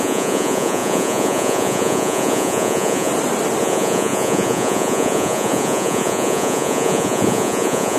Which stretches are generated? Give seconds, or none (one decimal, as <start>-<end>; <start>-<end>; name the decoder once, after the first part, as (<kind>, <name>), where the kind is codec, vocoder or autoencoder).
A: 0.0-3.1 (vocoder, Vocos); 3.6-8.0